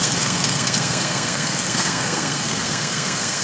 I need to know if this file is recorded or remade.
remade